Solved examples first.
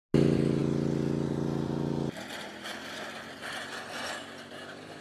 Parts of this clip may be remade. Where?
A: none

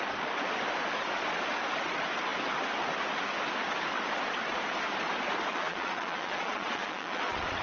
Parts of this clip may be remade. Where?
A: 5.5-7.6 (vocoder, Vocos)

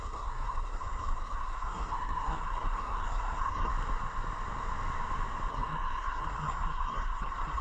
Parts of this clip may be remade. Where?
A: 0.0-3.7 (codec, SNAC); 5.5-7.6